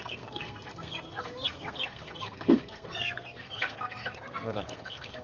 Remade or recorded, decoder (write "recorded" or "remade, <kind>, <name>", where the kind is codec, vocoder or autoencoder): remade, codec, SNAC